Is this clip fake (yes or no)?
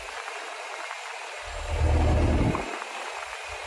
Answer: no